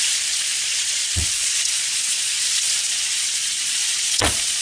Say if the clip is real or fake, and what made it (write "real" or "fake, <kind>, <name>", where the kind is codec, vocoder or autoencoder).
fake, vocoder, Vocos